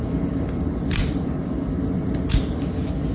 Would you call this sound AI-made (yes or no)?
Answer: no